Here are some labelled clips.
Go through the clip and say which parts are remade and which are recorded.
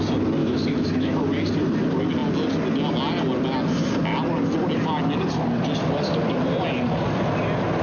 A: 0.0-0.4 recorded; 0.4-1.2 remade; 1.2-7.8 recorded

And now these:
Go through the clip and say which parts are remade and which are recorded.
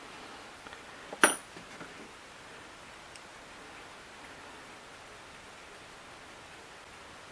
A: 0.0-7.3 recorded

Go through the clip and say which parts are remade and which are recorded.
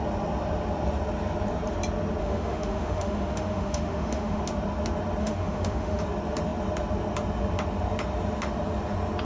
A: 0.0-2.2 recorded; 2.2-4.4 remade; 4.4-5.2 recorded; 5.2-6.0 remade; 6.0-9.2 recorded